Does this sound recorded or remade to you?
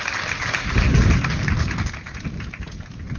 recorded